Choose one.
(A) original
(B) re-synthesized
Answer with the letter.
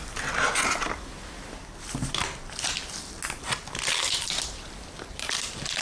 A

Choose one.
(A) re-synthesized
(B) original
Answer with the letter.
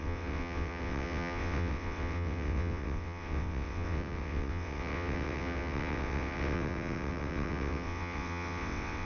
A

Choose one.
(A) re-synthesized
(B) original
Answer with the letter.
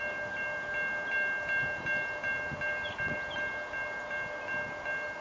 B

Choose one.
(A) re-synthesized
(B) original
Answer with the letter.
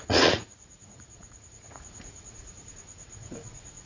A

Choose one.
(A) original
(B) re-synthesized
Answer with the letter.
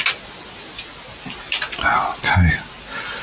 A